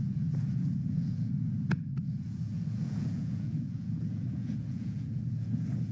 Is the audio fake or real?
fake